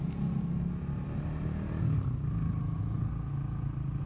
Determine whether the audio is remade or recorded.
recorded